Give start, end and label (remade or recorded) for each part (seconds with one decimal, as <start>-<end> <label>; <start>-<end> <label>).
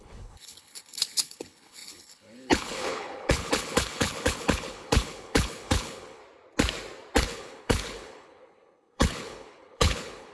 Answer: 0.0-6.2 remade; 6.2-7.2 recorded; 7.2-10.3 remade